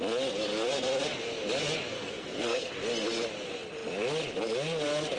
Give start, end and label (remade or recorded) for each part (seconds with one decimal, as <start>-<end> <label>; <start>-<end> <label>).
0.0-1.9 recorded; 1.9-2.7 remade; 2.7-5.2 recorded